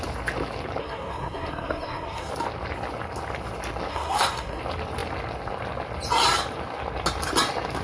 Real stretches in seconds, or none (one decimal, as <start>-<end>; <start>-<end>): 0.0-0.8; 2.3-3.9; 4.6-7.8